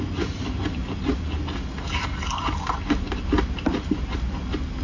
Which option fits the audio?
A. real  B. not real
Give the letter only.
A